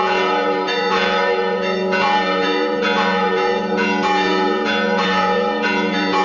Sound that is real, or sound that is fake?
fake